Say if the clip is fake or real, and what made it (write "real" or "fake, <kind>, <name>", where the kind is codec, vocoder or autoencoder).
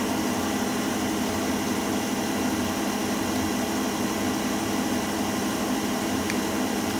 real